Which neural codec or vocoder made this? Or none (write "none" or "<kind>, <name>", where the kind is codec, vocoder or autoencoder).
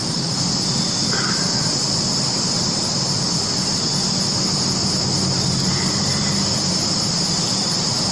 none